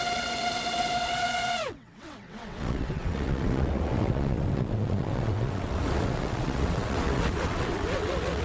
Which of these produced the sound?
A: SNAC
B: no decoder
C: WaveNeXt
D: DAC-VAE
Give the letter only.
C